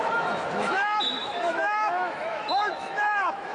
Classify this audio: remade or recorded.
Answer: remade